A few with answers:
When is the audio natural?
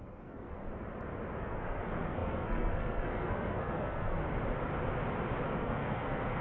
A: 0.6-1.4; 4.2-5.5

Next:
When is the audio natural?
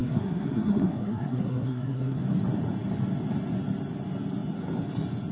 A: 2.2-5.3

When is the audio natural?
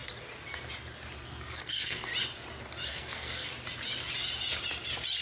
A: 0.0-1.2; 2.1-2.9; 3.5-5.2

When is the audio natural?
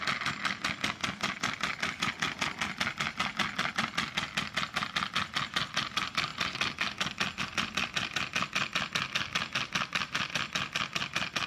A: 0.0-11.5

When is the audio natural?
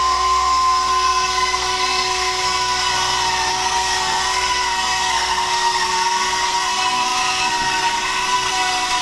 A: 2.9-3.5